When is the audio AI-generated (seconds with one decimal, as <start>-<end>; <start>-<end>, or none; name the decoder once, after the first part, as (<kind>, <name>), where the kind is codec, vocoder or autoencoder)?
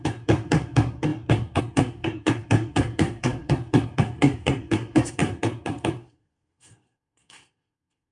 0.0-8.1 (codec, SNAC)